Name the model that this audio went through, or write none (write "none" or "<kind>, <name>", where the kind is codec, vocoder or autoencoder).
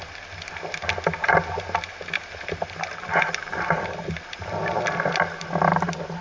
none